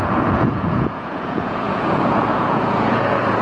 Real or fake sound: fake